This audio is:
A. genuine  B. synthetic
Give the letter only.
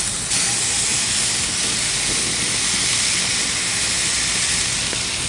A